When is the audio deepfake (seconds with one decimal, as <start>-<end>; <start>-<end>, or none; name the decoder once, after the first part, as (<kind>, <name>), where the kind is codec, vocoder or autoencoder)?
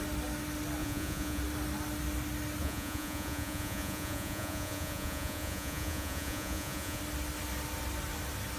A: 0.8-1.4 (vocoder, Vocos); 2.6-7.0